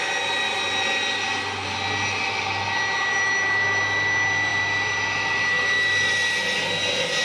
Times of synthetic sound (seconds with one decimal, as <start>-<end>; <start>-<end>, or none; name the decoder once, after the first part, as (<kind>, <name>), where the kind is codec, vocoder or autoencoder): none